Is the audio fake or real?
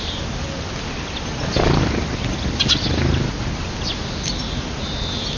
real